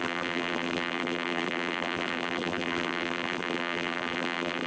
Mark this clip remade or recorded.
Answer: remade